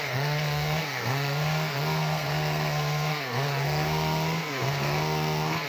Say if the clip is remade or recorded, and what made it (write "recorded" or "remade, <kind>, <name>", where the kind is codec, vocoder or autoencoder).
remade, codec, SNAC